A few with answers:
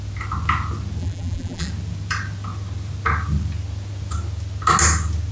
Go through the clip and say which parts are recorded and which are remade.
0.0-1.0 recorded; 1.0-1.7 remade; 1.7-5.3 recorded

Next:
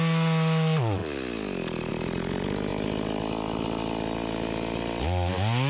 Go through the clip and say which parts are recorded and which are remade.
0.0-5.7 recorded

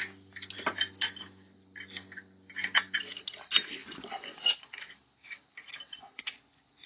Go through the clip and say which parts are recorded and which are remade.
0.0-3.8 recorded; 3.8-4.8 remade; 4.8-5.9 recorded; 5.9-6.9 remade

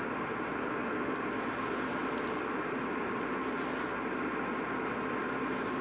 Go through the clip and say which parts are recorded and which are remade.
0.0-5.8 recorded

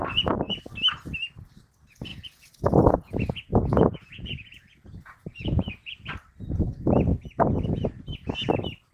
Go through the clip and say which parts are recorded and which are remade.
0.0-0.6 remade; 0.6-2.1 recorded; 2.1-6.1 remade; 6.1-8.9 recorded